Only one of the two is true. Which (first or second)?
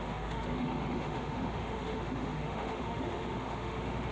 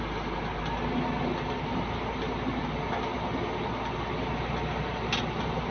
second